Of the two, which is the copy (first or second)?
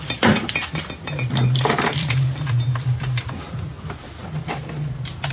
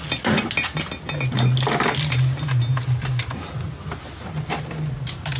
first